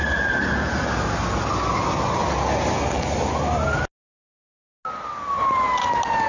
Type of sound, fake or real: real